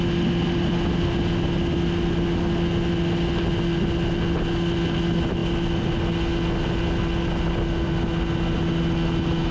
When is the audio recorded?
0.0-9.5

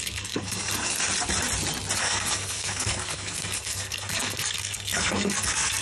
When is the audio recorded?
0.9-2.0

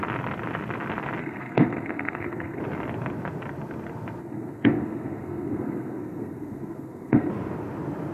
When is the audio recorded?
0.0-1.2; 2.6-4.2; 7.3-8.1